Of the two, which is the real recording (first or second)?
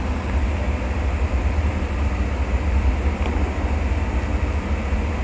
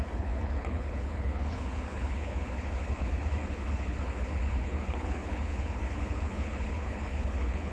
first